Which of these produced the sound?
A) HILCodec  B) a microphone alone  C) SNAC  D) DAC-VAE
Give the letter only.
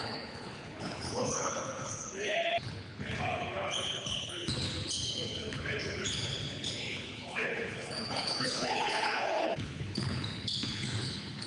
A